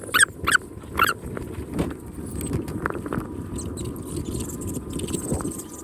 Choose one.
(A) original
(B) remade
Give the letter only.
A